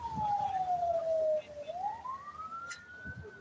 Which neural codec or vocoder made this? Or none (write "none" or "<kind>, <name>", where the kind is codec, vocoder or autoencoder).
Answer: none